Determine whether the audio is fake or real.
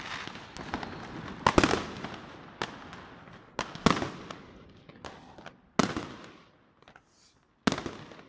real